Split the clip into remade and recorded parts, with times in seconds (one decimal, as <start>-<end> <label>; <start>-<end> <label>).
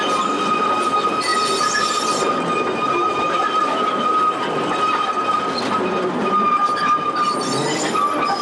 0.0-8.4 recorded